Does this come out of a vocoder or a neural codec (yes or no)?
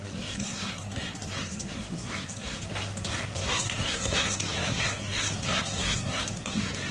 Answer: yes